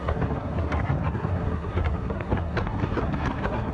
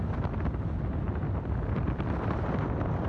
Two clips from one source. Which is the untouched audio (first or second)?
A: second